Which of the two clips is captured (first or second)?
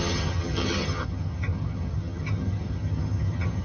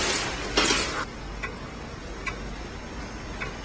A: second